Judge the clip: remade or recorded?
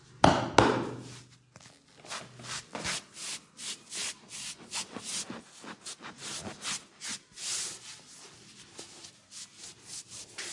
recorded